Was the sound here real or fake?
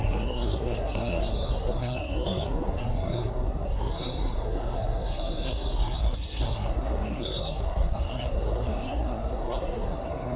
fake